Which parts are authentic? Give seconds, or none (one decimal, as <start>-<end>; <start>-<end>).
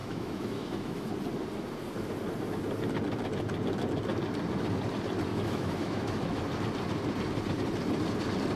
1.1-5.3; 6.4-8.6